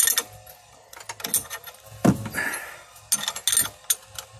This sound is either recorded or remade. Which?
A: recorded